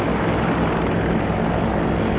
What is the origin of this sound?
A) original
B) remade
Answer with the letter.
A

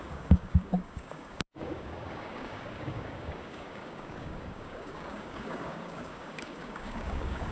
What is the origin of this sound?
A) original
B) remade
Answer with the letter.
B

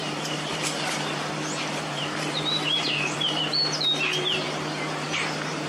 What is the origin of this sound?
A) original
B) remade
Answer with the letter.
B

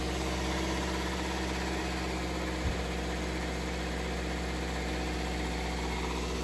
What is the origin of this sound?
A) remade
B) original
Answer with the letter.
B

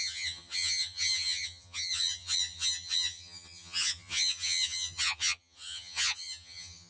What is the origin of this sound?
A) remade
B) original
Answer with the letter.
A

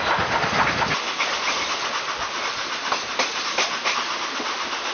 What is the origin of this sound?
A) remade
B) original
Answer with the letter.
B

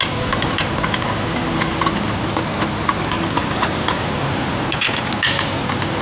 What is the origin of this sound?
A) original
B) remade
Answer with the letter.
A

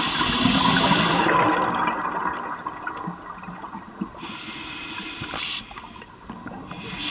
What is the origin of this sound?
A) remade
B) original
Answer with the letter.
B